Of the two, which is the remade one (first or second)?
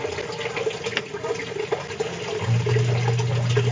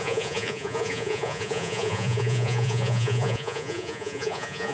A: second